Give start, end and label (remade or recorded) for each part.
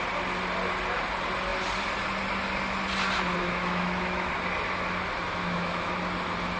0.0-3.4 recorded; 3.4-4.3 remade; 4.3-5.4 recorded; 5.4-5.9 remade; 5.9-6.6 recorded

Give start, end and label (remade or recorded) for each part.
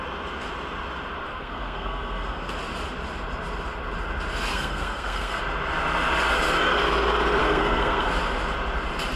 0.0-1.3 recorded; 1.3-2.5 remade; 2.5-4.5 recorded; 4.5-5.4 remade; 5.4-7.4 recorded; 7.4-8.1 remade; 8.1-9.2 recorded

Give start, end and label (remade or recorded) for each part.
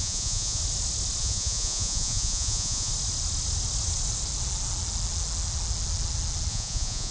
0.0-0.6 remade; 0.6-1.2 recorded; 1.2-2.9 remade; 2.9-6.5 recorded; 6.5-7.1 remade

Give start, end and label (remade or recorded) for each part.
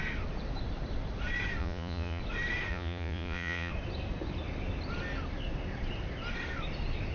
0.0-1.6 recorded; 1.6-2.2 remade; 2.2-2.7 recorded; 2.7-3.7 remade; 3.7-7.1 recorded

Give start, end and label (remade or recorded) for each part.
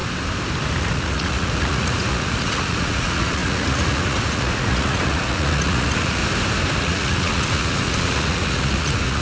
0.0-0.8 recorded; 0.8-6.2 remade; 6.2-6.8 recorded; 6.8-9.2 remade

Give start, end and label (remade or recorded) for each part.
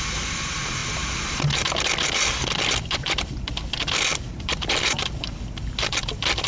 0.0-6.5 recorded